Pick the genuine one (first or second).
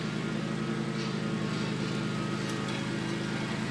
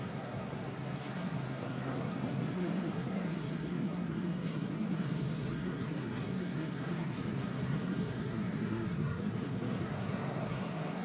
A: first